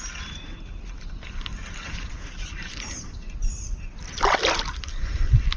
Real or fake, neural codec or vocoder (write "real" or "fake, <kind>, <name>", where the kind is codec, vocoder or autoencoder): real